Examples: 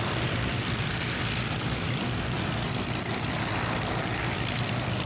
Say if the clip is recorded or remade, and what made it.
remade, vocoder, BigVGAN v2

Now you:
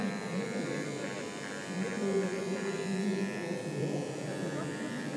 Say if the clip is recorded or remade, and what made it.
remade, vocoder, BigVGAN v2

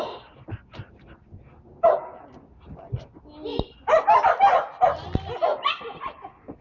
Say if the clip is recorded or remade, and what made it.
recorded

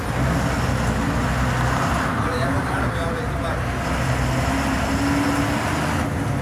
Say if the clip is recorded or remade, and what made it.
recorded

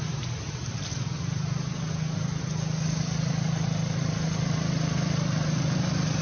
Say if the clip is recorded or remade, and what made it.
recorded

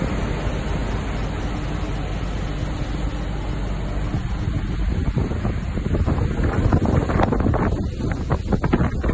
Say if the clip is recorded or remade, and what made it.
recorded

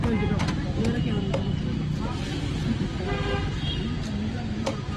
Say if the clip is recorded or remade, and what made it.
recorded